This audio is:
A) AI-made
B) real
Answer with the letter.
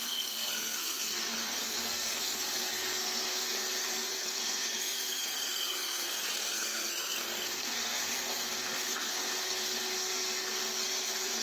A